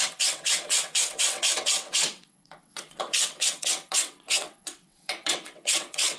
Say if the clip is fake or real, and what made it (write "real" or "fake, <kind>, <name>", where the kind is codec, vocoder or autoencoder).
fake, vocoder, WaveNeXt